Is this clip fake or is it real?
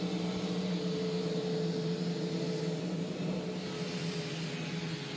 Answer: real